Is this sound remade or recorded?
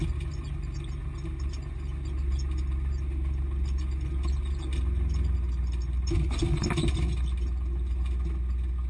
recorded